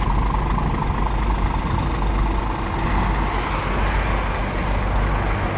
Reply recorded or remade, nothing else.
recorded